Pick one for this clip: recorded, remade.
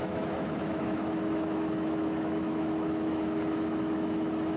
remade